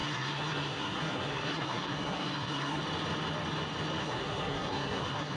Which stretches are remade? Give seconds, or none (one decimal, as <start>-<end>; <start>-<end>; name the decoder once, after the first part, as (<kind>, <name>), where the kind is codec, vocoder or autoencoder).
0.0-2.8 (codec, SNAC); 4.0-5.4